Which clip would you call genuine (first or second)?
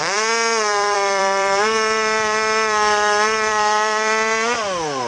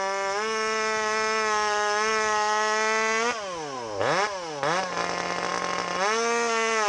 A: second